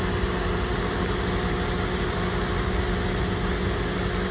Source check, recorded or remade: recorded